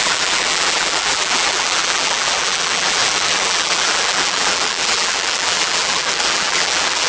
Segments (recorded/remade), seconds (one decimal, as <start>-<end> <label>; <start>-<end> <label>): 0.0-7.1 remade

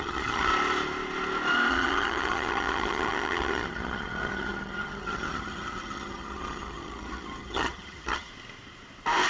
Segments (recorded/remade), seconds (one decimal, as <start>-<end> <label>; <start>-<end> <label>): 0.0-0.5 remade; 0.5-1.7 recorded; 1.7-8.3 remade; 8.3-9.3 recorded

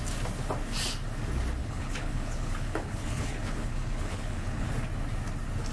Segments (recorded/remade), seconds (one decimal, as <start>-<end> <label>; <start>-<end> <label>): 0.0-1.6 recorded; 1.6-4.7 remade; 4.7-5.7 recorded